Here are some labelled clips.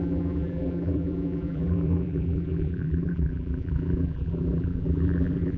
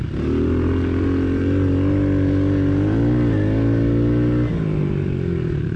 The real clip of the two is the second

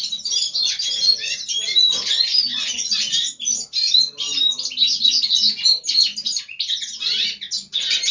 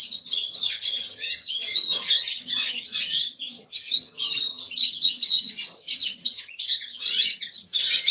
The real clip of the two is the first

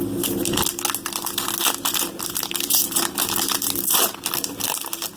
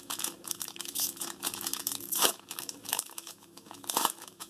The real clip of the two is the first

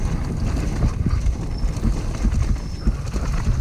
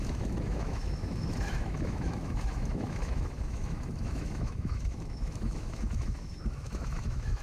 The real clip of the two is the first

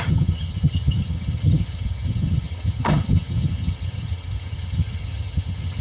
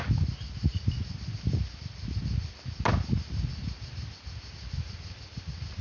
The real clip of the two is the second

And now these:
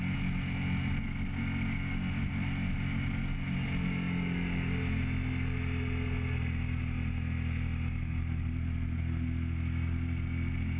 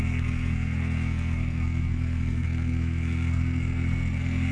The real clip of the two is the first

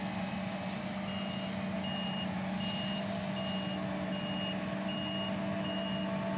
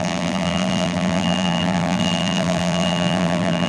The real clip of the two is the first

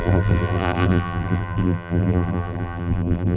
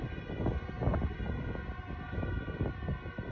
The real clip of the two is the second